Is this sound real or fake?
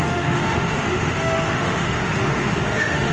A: fake